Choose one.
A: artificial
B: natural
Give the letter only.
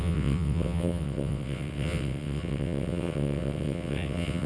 A